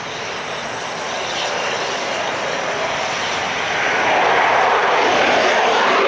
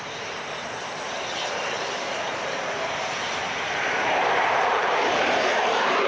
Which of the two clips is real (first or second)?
first